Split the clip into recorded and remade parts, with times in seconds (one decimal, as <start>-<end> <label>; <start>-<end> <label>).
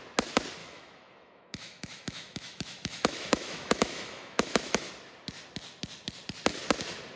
0.0-0.6 recorded; 0.6-4.9 remade; 4.9-7.2 recorded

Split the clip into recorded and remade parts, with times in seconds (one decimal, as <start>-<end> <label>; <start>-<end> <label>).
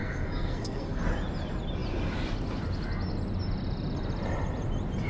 0.0-1.0 remade; 1.0-5.1 recorded